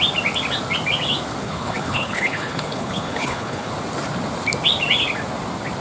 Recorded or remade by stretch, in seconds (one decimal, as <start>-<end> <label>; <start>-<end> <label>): 0.0-1.4 recorded; 1.4-3.7 remade; 3.7-5.8 recorded